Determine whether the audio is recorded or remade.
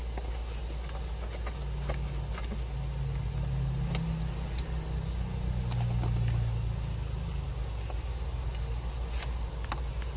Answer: recorded